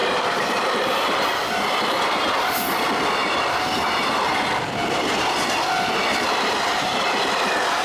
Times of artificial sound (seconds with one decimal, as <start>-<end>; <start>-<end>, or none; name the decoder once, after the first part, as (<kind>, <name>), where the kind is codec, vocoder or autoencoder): 0.0-7.8 (vocoder, BigVGAN v2)